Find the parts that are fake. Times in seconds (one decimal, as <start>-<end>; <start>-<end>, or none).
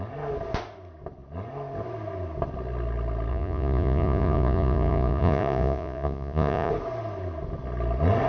3.3-6.7